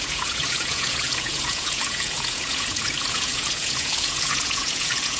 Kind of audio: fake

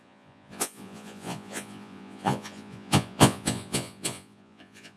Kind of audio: fake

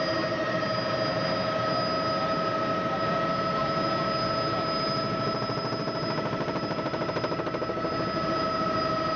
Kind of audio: real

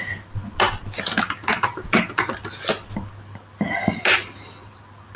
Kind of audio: real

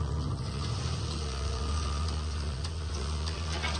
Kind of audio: fake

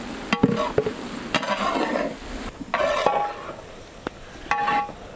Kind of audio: real